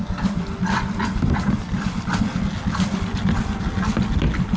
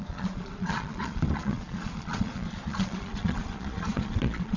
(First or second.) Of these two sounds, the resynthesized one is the second